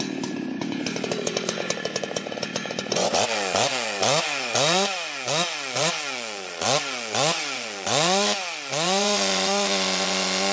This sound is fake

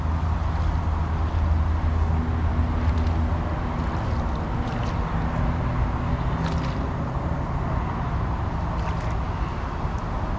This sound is real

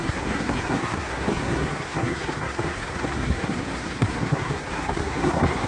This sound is fake